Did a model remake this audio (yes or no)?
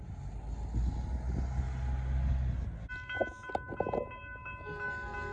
no